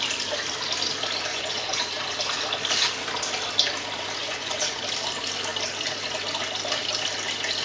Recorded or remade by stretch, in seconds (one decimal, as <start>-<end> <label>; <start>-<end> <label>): 0.0-1.3 recorded; 1.3-1.8 remade; 1.8-4.2 recorded; 4.2-4.8 remade; 4.8-7.6 recorded